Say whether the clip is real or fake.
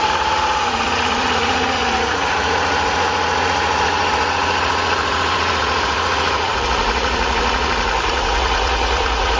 fake